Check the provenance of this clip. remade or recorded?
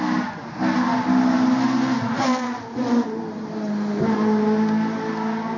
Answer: recorded